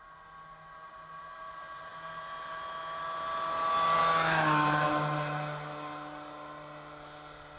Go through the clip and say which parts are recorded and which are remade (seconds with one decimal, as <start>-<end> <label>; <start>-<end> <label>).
0.0-7.6 recorded

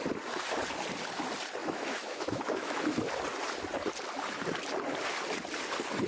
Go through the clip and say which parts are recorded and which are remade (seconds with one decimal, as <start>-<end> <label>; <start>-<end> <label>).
0.0-1.6 recorded; 1.6-2.8 remade; 2.8-6.1 recorded

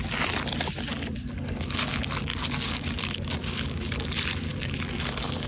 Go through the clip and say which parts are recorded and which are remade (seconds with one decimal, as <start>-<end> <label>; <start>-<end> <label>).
0.0-1.2 recorded; 1.2-1.9 remade; 1.9-2.3 recorded; 2.3-3.9 remade; 3.9-4.5 recorded; 4.5-5.5 remade

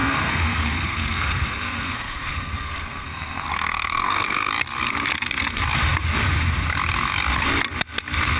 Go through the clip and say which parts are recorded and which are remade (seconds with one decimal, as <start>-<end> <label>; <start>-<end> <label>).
0.0-4.5 remade; 4.5-8.4 recorded

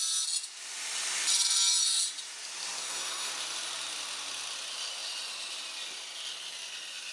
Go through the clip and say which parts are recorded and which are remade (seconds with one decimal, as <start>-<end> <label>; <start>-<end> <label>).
0.0-2.8 recorded; 2.8-3.3 remade; 3.3-7.1 recorded

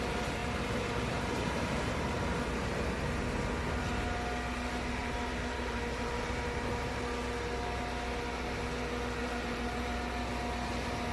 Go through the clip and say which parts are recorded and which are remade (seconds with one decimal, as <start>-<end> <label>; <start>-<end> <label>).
0.0-0.4 recorded; 0.4-2.2 remade; 2.2-5.0 recorded; 5.0-7.0 remade; 7.0-9.2 recorded; 9.2-10.0 remade; 10.0-11.1 recorded

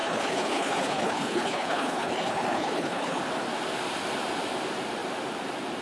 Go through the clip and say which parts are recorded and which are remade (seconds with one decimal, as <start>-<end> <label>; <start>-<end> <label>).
0.0-3.2 remade; 3.2-5.8 recorded